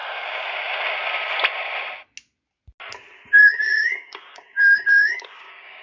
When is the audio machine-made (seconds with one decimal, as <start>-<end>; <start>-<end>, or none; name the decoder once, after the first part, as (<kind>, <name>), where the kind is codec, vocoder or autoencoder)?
3.4-5.8 (codec, DAC)